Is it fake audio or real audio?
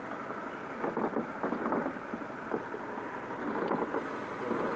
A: real